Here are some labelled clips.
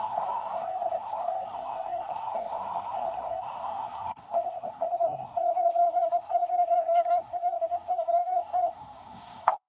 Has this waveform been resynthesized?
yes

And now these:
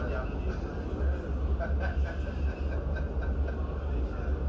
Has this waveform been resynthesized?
no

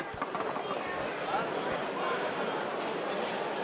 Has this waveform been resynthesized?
no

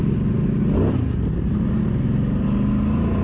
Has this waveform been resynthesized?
no